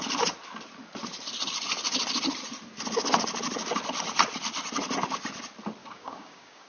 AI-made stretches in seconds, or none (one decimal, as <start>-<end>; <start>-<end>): 5.8-6.7